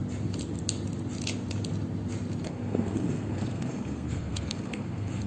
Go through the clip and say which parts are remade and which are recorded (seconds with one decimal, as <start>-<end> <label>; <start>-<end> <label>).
0.0-2.4 recorded; 2.4-5.3 remade

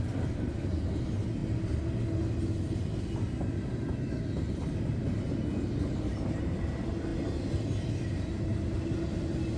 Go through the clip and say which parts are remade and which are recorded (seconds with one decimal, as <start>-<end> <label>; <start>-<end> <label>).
0.0-9.6 recorded

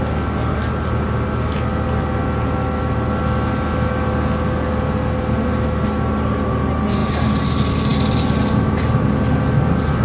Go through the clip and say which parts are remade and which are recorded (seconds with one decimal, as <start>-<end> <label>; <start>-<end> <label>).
0.0-10.0 recorded

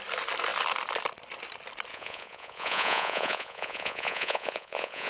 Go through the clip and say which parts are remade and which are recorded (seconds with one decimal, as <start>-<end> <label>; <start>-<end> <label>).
0.0-1.9 recorded; 1.9-5.1 remade

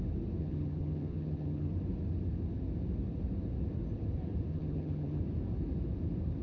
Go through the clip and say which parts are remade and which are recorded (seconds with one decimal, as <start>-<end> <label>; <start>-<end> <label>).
0.0-0.4 recorded; 0.4-1.7 remade; 1.7-4.5 recorded; 4.5-5.2 remade; 5.2-6.4 recorded

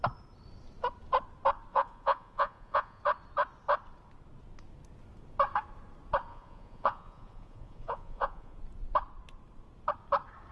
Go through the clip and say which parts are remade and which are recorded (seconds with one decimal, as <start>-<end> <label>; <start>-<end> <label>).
0.0-1.7 recorded; 1.7-3.0 remade; 3.0-6.3 recorded; 6.3-8.6 remade; 8.6-10.5 recorded

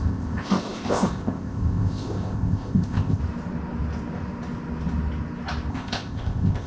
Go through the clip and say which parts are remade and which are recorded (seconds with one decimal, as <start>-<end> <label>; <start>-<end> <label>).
0.0-3.2 remade; 3.2-5.7 recorded; 5.7-6.7 remade

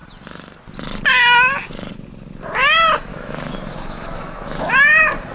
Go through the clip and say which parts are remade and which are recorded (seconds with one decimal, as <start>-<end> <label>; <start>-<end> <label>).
0.0-3.1 recorded; 3.1-4.7 remade; 4.7-5.3 recorded